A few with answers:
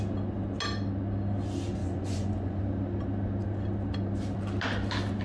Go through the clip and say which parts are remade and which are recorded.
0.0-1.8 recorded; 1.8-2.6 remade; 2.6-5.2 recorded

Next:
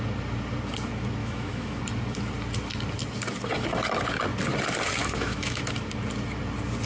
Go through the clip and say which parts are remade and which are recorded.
0.0-1.2 recorded; 1.2-1.8 remade; 1.8-5.0 recorded; 5.0-5.6 remade; 5.6-6.9 recorded

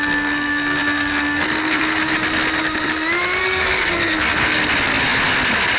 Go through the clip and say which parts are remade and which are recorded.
0.0-2.1 remade; 2.1-3.4 recorded; 3.4-4.6 remade; 4.6-5.8 recorded

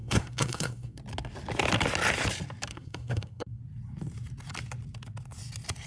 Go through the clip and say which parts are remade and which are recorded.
0.0-1.0 remade; 1.0-2.7 recorded; 2.7-3.6 remade; 3.6-5.9 recorded